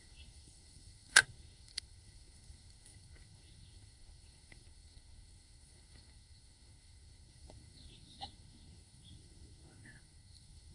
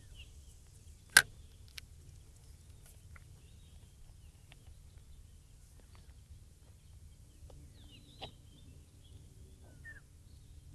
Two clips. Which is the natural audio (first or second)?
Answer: second